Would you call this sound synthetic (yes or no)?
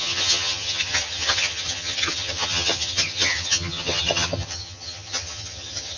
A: yes